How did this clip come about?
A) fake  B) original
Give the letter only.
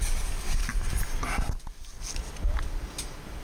B